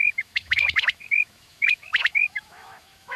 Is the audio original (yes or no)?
no